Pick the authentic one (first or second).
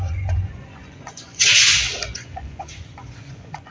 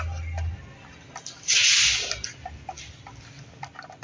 second